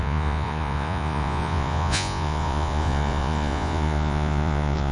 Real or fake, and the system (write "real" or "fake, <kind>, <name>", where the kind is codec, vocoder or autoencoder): fake, vocoder, Vocos